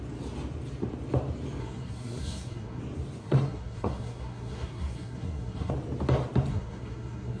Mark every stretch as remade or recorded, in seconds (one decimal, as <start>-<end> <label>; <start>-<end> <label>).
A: 0.0-1.6 recorded; 1.6-2.8 remade; 2.8-3.2 recorded; 3.2-5.7 remade; 5.7-6.5 recorded; 6.5-7.4 remade